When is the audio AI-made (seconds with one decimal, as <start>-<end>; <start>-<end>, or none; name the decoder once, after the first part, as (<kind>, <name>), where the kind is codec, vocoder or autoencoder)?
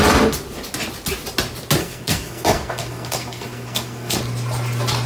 1.8-4.2 (codec, SNAC)